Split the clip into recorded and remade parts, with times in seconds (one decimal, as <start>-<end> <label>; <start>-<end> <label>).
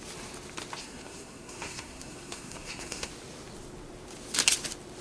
0.0-0.8 recorded; 0.8-3.1 remade; 3.1-5.0 recorded